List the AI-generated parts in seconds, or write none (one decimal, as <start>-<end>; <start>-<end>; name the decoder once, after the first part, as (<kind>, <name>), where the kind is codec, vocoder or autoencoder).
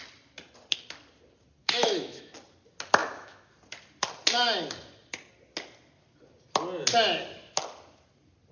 1.6-2.3 (autoencoder, DAC-VAE); 3.0-3.5